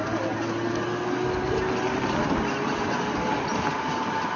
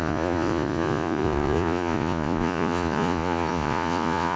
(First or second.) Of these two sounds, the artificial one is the second